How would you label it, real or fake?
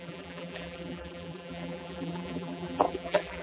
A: fake